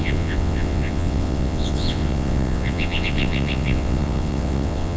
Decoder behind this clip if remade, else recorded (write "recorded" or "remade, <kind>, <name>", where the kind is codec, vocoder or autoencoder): remade, vocoder, WaveNeXt